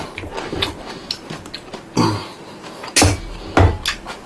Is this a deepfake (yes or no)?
no